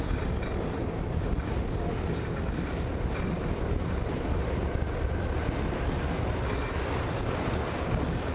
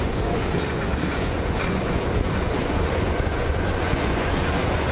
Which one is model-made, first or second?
second